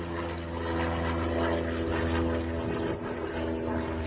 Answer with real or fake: real